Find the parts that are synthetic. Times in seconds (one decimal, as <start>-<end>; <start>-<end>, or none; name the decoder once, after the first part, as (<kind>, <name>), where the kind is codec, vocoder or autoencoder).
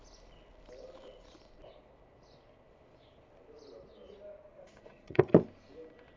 4.5-5.2 (vocoder, Vocos)